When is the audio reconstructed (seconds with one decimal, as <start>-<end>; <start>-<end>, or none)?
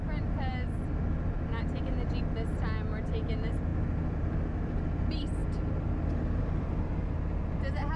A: none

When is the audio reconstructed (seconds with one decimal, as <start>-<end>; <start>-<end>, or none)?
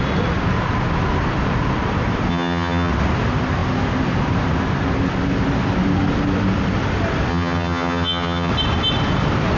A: 2.3-2.9; 7.3-8.5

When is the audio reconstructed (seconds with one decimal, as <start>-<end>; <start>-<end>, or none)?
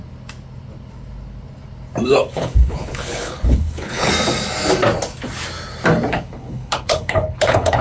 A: 2.2-4.1; 6.1-7.8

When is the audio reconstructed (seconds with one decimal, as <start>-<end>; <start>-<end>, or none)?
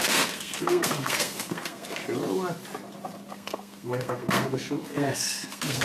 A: 0.0-2.0; 3.3-5.8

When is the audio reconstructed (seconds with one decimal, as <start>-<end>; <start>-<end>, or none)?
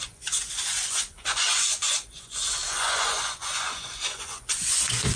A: 0.0-5.2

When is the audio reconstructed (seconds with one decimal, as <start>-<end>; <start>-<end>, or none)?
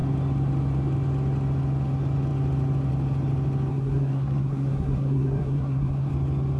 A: 3.7-6.1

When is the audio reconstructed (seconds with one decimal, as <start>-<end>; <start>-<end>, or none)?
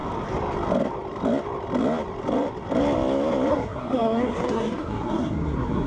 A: 3.5-5.9